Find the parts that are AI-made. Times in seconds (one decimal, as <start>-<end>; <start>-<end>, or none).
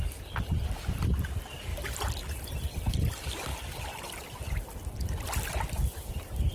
0.0-6.5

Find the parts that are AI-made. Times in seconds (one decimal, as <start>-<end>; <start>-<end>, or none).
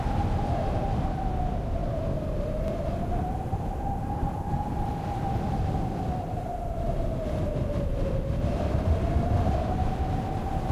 none